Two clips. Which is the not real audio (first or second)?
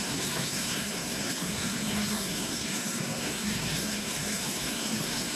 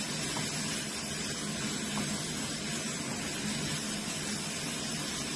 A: first